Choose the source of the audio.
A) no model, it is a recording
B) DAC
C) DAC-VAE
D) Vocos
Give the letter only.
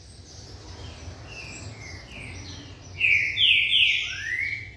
A